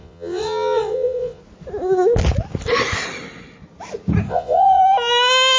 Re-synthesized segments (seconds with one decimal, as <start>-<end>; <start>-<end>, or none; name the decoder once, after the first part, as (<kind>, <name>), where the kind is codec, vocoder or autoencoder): 0.0-1.4 (vocoder, Vocos); 4.3-4.8